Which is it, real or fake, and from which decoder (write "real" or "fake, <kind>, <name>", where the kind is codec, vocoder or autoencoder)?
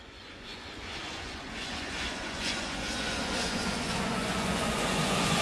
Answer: fake, vocoder, Vocos